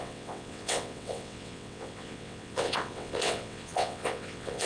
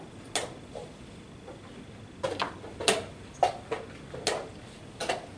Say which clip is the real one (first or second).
second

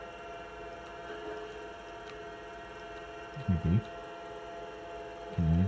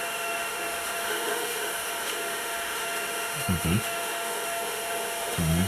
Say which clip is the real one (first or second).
first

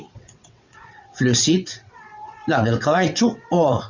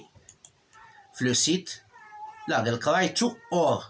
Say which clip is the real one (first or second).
second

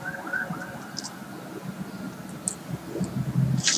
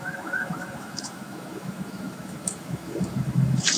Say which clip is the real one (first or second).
first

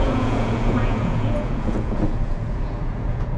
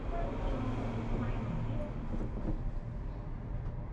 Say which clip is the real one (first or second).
second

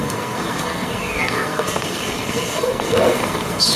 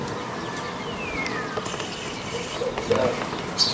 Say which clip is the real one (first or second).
second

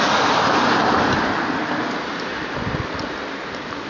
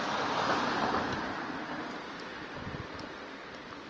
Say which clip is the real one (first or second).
first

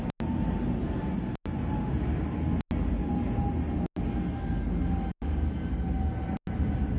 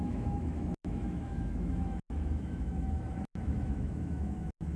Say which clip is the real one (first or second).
first